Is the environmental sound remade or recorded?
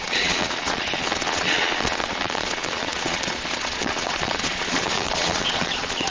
remade